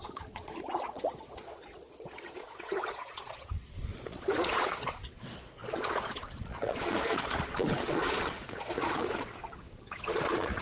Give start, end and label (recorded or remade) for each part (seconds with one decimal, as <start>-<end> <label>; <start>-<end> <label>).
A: 0.0-10.6 remade

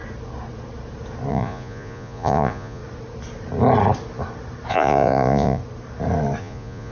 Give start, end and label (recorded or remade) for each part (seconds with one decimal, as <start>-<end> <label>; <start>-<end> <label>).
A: 0.0-1.3 recorded; 1.3-2.8 remade; 2.8-4.7 recorded; 4.7-5.6 remade; 5.6-6.4 recorded; 6.4-6.9 remade

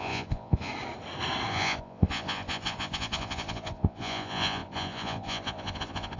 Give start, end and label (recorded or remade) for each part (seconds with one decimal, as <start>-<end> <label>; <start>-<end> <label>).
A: 0.0-0.7 remade; 0.7-1.5 recorded; 1.5-6.2 remade

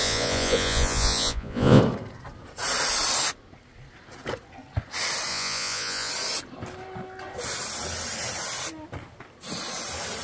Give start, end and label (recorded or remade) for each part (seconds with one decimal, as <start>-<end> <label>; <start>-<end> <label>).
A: 0.0-1.8 remade; 1.8-5.3 recorded; 5.3-6.1 remade; 6.1-10.2 recorded

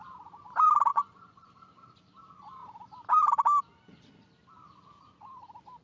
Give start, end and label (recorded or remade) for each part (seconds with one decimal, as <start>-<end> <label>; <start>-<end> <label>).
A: 0.0-0.9 recorded; 0.9-1.5 remade; 1.5-5.8 recorded